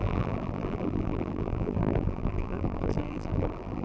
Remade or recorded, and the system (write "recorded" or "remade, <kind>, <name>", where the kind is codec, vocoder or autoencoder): remade, vocoder, BigVGAN v2